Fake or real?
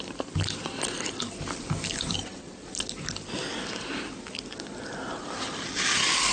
real